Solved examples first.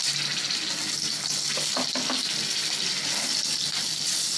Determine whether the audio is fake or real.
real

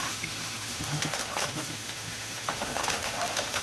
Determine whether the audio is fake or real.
fake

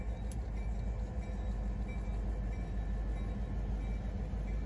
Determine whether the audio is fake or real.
real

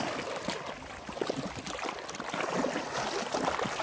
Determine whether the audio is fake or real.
real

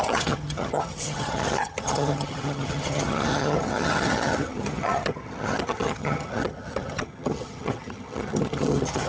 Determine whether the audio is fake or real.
fake